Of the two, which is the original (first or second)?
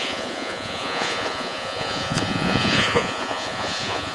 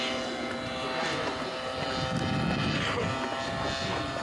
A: second